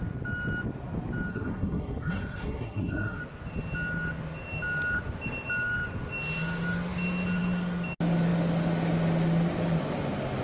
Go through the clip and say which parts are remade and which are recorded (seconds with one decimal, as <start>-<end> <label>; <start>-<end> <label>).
0.0-1.3 recorded; 1.3-3.2 remade; 3.2-10.4 recorded